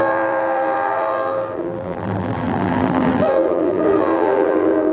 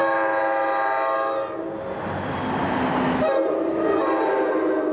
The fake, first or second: first